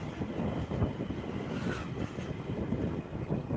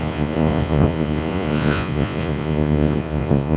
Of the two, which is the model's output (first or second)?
second